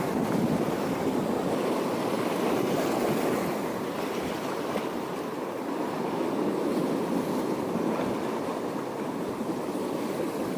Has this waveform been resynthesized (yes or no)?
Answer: no